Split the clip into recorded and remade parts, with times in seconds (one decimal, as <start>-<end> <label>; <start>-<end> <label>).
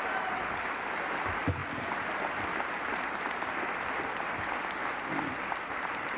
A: 0.0-1.6 recorded; 1.6-2.2 remade; 2.2-4.8 recorded; 4.8-6.2 remade